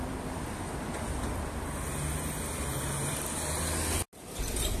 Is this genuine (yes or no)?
yes